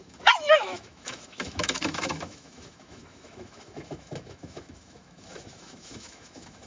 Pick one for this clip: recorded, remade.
remade